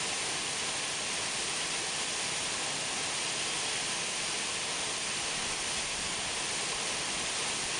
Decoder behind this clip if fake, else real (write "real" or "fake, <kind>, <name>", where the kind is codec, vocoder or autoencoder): real